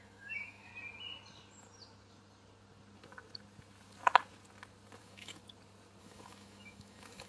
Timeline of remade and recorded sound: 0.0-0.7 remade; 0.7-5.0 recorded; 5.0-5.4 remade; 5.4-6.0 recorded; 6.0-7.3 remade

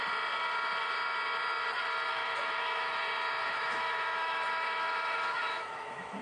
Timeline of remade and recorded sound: 0.0-2.1 recorded; 2.1-3.0 remade; 3.0-3.4 recorded; 3.4-6.2 remade

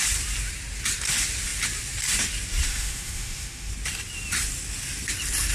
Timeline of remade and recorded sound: 0.0-2.7 recorded; 2.7-3.7 remade; 3.7-5.5 recorded

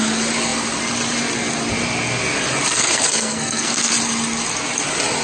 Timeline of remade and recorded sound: 0.0-2.7 recorded; 2.7-3.9 remade; 3.9-5.2 recorded

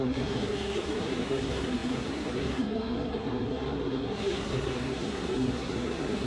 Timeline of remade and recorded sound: 0.0-6.3 remade

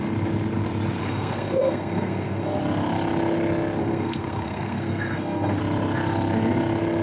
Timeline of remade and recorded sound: 0.0-1.0 recorded; 1.0-2.6 remade; 2.6-3.8 recorded; 3.8-5.6 remade; 5.6-7.0 recorded

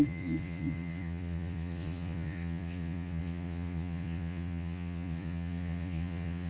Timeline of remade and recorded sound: 0.0-6.5 remade